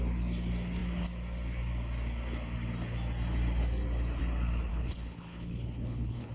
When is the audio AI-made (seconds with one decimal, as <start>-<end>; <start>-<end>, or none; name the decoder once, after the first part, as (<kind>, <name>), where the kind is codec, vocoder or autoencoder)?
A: 4.7-6.3 (codec, HILCodec)